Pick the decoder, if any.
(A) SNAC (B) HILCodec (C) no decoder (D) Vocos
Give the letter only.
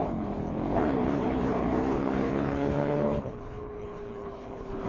B